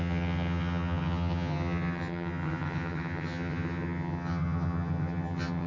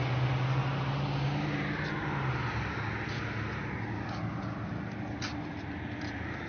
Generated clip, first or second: first